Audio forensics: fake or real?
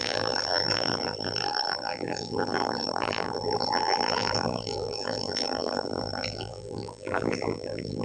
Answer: fake